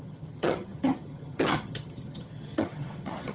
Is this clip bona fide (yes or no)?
no